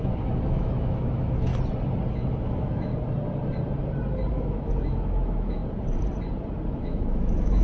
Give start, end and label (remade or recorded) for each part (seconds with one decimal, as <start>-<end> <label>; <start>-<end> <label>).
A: 0.0-1.5 remade; 1.5-2.1 recorded; 2.1-2.9 remade; 2.9-4.3 recorded; 4.3-5.6 remade; 5.6-6.7 recorded; 6.7-7.6 remade